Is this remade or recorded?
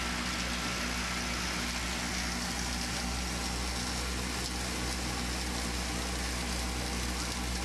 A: recorded